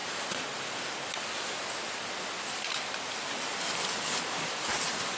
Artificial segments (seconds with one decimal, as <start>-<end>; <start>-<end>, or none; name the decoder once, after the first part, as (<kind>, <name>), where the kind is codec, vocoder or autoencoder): none